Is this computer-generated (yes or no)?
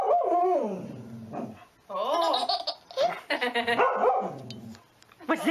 no